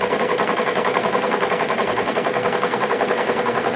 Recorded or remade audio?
remade